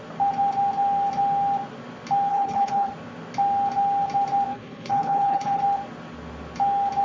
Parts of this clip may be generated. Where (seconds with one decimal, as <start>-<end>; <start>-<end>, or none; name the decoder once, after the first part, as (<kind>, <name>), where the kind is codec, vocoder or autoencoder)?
2.3-2.9 (codec, HILCodec); 4.5-5.6